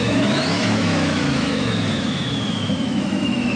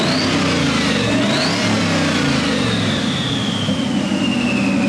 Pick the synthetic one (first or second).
first